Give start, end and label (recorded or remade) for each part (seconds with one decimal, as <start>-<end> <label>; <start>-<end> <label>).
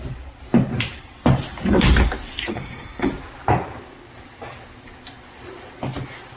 0.0-2.5 recorded; 2.5-3.1 remade; 3.1-6.4 recorded